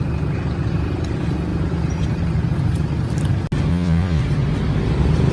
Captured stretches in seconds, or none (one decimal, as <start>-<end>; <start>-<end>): 0.0-3.7; 4.2-5.3